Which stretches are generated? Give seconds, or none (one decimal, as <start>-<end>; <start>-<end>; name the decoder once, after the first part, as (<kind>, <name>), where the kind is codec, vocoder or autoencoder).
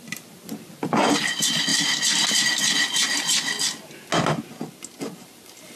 none